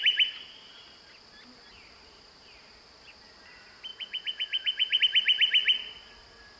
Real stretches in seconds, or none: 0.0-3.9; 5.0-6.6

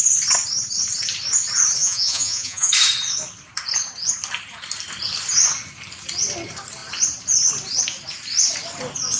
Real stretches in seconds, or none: 0.0-1.8; 2.7-9.2

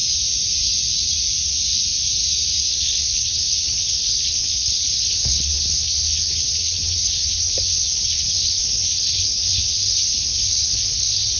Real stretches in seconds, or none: 0.0-2.7

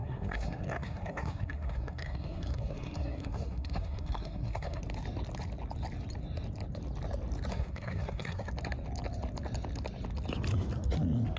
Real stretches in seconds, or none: 4.8-7.5; 8.5-11.4

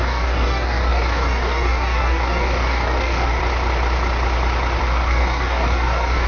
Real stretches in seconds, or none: 3.4-4.8

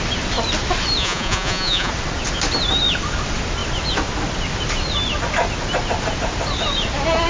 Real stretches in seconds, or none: 0.0-1.0; 1.9-7.3

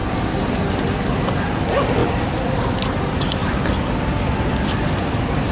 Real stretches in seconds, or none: 1.6-2.0; 2.6-5.5